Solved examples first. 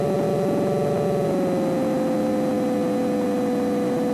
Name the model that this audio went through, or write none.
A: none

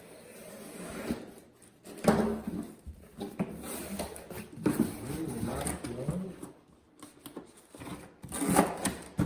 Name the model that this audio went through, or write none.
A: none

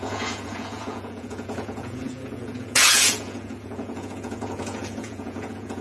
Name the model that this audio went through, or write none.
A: vocoder, Vocos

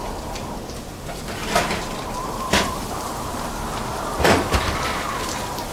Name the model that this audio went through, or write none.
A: vocoder, BigVGAN v2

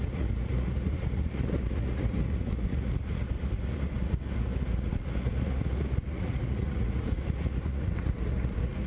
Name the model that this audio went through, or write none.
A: vocoder, Vocos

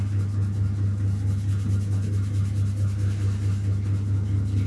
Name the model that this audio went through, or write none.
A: none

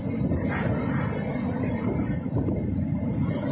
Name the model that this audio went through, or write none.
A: none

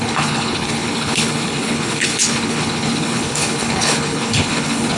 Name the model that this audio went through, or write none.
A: codec, HILCodec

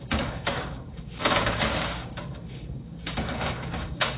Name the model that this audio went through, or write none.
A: codec, DAC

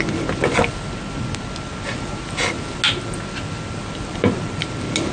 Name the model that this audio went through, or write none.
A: none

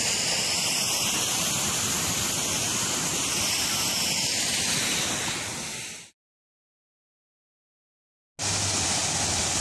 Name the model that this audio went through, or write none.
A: none